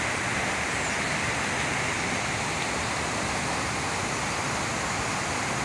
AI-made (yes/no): no